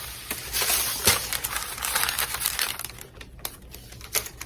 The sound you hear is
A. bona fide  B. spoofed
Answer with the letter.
A